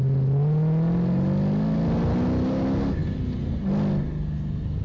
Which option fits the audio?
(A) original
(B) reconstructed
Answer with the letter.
A